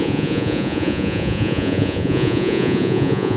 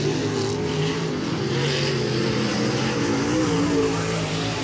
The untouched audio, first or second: second